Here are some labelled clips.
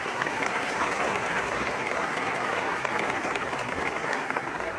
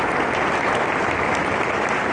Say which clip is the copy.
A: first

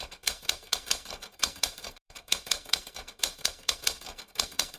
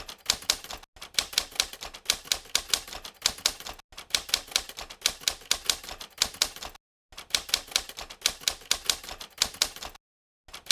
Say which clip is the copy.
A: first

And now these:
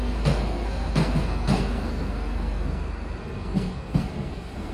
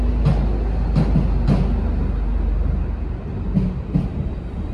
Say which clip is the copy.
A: first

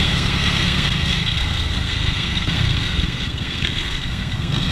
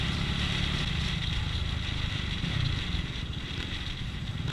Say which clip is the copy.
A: first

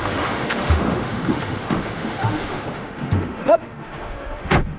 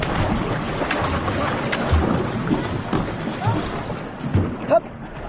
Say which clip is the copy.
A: first